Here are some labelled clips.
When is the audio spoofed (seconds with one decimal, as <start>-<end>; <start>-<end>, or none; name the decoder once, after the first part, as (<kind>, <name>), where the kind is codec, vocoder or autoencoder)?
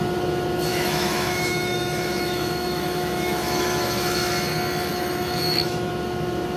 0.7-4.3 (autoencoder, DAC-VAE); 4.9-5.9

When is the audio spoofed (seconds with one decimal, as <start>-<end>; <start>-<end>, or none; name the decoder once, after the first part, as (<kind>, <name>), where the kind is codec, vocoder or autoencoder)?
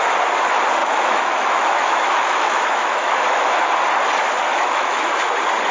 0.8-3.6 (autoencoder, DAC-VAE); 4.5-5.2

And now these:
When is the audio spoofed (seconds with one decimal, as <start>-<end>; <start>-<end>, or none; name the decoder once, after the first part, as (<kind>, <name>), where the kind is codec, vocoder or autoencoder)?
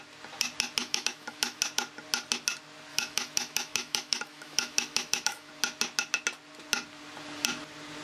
0.8-1.6 (autoencoder, DAC-VAE); 2.9-5.5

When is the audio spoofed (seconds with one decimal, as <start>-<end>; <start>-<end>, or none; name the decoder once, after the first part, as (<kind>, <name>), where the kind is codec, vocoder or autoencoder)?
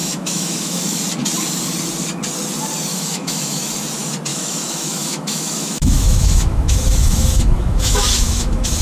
0.0-1.0 (autoencoder, DAC-VAE); 2.9-3.6; 4.3-8.8